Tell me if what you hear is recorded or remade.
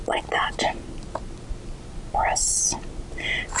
recorded